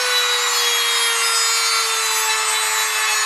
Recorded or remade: recorded